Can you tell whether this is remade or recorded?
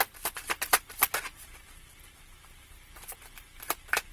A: recorded